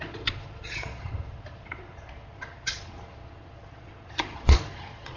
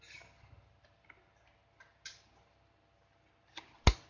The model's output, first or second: first